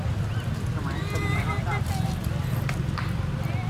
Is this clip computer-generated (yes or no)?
no